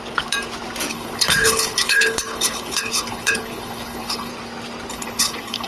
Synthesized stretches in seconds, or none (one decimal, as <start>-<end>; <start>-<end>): 0.9-4.3; 4.9-5.7